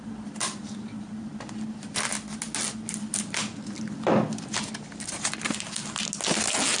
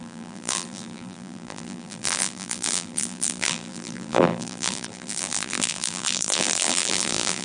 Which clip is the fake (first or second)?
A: second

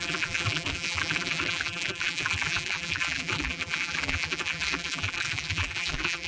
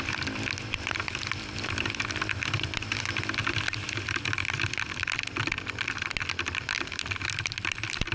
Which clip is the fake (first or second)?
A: first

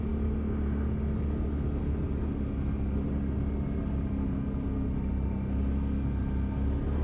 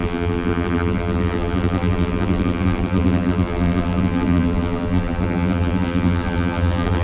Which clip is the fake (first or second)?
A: second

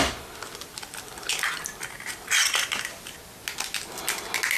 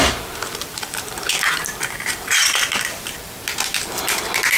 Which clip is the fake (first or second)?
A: second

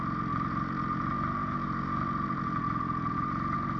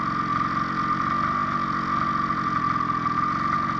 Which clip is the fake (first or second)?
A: first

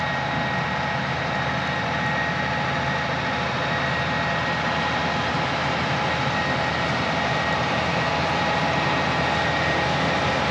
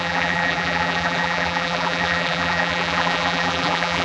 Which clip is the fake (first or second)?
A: second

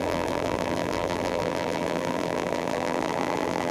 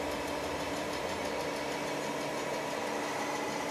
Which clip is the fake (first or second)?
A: first